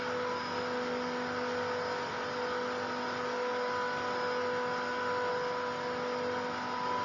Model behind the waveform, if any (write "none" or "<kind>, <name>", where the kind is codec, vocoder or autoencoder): none